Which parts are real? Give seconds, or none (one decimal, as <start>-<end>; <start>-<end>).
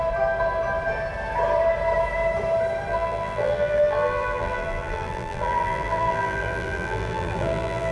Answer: 0.0-2.9